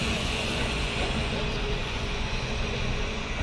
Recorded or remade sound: remade